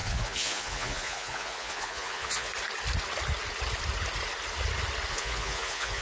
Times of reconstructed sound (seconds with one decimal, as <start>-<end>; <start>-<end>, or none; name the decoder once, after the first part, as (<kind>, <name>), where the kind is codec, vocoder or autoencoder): 0.0-2.5 (vocoder, Vocos); 5.1-6.0